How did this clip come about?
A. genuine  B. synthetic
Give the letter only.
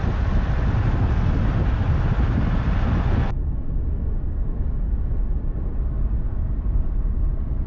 A